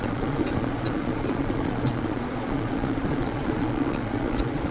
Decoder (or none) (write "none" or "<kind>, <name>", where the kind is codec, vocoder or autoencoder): vocoder, Vocos